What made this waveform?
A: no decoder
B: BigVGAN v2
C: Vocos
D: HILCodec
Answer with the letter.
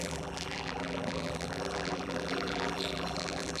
B